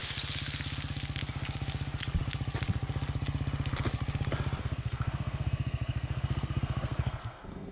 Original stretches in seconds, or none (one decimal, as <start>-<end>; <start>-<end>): 0.0-4.6